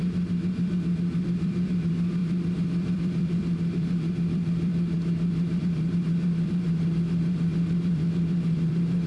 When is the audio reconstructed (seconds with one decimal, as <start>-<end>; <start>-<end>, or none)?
0.0-9.1